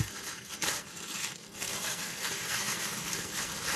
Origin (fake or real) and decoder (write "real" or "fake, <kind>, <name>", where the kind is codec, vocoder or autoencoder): fake, codec, SNAC